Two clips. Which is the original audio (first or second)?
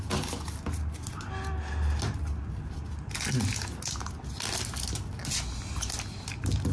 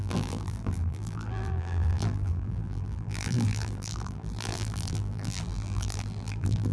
first